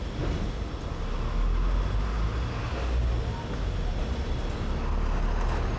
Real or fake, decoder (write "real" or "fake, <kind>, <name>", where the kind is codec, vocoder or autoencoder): real